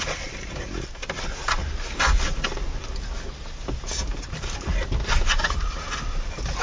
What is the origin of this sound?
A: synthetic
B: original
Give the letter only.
B